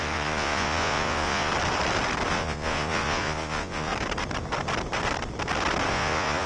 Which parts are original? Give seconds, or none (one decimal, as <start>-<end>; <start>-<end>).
1.5-2.3; 3.9-5.9